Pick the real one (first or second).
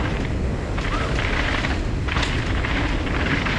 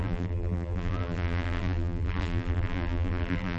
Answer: first